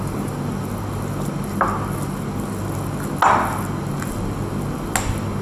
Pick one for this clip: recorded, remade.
recorded